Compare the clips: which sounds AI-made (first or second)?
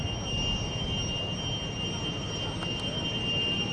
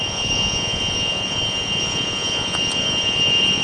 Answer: second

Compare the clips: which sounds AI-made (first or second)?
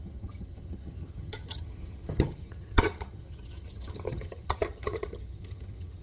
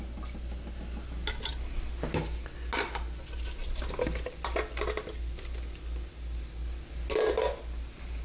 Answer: first